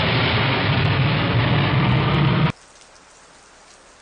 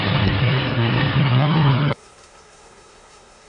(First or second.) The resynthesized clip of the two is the second